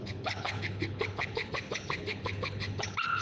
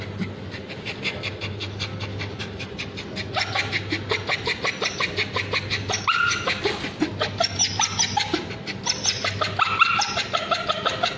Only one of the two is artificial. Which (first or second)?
first